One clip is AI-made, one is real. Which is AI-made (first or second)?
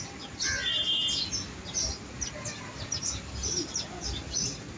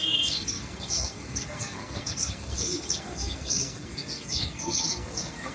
second